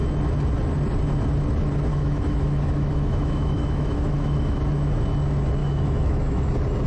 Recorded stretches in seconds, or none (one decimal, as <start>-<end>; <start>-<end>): 0.0-1.9; 4.6-5.6; 6.5-6.9